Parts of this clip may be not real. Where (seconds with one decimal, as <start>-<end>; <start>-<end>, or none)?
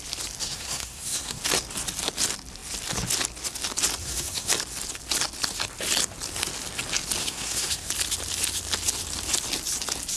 0.4-1.4; 4.0-4.5; 7.2-7.9